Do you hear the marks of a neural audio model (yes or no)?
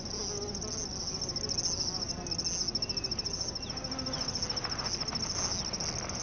no